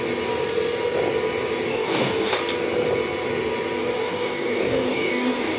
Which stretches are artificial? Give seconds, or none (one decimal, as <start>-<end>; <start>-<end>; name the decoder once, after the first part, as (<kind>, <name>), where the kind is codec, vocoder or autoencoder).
1.7-2.4 (codec, DAC); 3.8-5.6